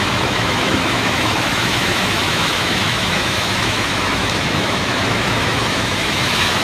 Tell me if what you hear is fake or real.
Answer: fake